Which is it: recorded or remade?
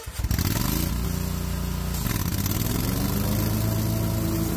recorded